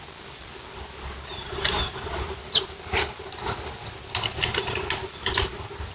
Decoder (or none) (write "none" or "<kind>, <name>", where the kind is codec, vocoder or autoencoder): none